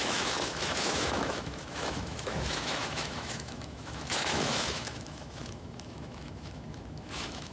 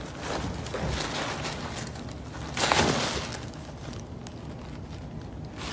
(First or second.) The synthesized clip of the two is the first